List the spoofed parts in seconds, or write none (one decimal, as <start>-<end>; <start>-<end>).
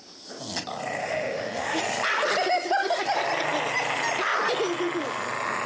1.0-1.8